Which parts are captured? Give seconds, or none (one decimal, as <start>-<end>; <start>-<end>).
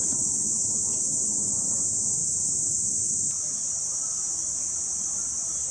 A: 0.0-5.7